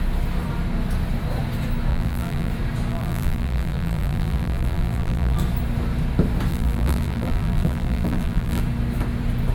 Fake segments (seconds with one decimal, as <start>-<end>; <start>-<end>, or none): 1.9-2.5; 2.9-5.4; 6.5-8.6

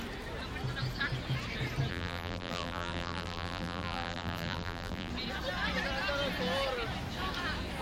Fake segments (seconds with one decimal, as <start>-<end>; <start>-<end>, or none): 1.9-5.1

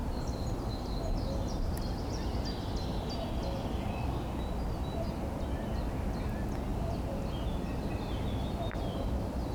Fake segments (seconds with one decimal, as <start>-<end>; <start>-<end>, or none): 0.0-0.7; 6.7-7.2

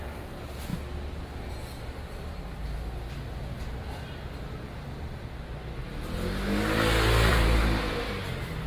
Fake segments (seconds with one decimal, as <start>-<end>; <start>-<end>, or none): 7.3-8.0